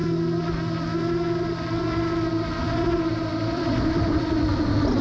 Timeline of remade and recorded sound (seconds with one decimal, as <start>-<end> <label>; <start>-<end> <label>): 0.0-3.0 recorded; 3.0-5.0 remade

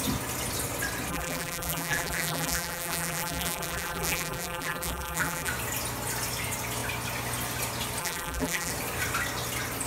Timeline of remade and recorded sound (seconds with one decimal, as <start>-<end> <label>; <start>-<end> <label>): 0.0-1.1 recorded; 1.1-5.5 remade; 5.5-8.0 recorded; 8.0-8.7 remade; 8.7-9.9 recorded

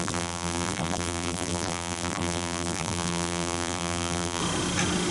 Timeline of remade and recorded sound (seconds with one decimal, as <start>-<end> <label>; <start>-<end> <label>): 0.0-4.4 remade; 4.4-5.1 recorded

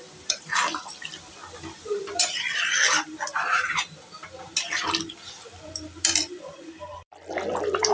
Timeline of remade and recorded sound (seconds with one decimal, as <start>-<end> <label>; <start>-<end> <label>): 0.0-7.9 remade

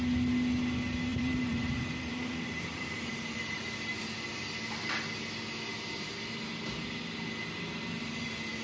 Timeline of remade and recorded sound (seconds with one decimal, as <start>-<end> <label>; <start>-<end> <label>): 0.0-1.1 recorded; 1.1-4.1 remade; 4.1-8.6 recorded

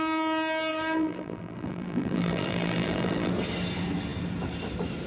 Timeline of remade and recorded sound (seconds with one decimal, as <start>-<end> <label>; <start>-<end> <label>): 0.0-0.7 recorded; 0.7-3.3 remade; 3.3-5.1 recorded

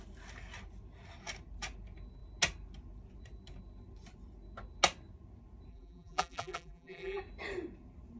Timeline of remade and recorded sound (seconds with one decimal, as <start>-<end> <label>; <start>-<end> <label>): 0.0-5.7 recorded; 5.7-7.2 remade; 7.2-8.2 recorded

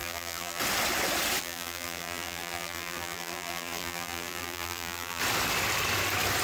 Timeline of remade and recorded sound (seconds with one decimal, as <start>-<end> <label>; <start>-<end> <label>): 0.0-0.6 remade; 0.6-1.4 recorded; 1.4-5.2 remade; 5.2-6.4 recorded